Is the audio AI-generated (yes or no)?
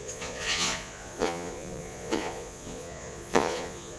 yes